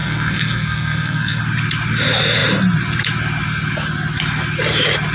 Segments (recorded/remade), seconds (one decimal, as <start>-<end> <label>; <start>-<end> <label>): 0.0-1.4 remade; 1.4-5.1 recorded